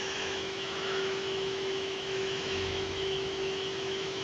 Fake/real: fake